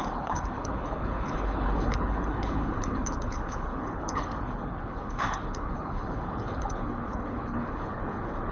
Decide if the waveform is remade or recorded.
remade